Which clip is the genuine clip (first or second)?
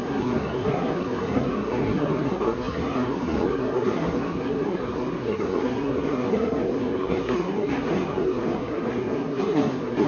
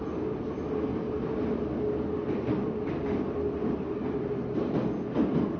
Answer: second